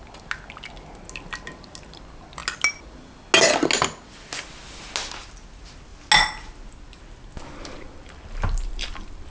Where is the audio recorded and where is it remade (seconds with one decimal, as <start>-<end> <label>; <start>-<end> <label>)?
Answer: 0.0-9.3 recorded